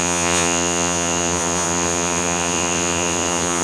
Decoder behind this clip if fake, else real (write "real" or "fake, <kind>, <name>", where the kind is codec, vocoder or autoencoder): fake, vocoder, Vocos